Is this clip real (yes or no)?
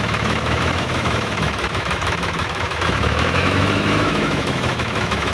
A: no